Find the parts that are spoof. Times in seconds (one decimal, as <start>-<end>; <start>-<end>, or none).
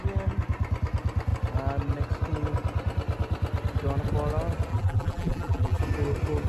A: 4.7-5.8